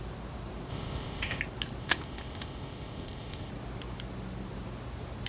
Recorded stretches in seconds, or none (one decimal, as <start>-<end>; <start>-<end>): 0.0-0.7; 1.4-1.8; 3.5-5.3